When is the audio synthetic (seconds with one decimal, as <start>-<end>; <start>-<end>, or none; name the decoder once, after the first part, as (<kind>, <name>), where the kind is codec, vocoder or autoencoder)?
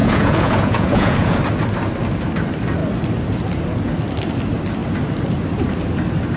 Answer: 0.0-1.4 (vocoder, Vocos)